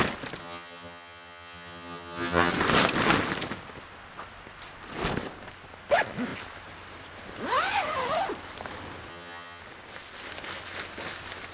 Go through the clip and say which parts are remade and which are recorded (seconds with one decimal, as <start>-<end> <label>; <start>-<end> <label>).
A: 0.0-0.4 recorded; 0.4-2.5 remade; 2.5-9.1 recorded; 9.1-9.6 remade; 9.6-11.5 recorded